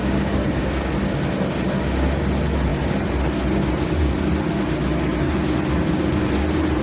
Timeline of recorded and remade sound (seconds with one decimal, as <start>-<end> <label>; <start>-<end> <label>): 0.0-0.9 remade; 0.9-6.8 recorded